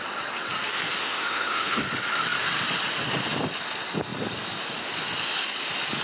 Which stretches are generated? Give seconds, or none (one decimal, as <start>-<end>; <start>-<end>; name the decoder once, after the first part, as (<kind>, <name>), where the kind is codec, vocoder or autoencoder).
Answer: 1.0-1.8 (autoencoder, DAC-VAE)